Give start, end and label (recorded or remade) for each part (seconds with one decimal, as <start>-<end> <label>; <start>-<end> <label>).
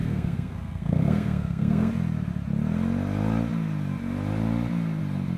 0.0-1.9 remade; 1.9-5.4 recorded